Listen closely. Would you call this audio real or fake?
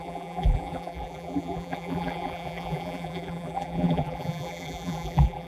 fake